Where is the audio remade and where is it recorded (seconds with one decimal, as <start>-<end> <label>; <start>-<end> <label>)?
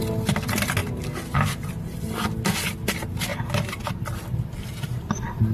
0.0-5.5 recorded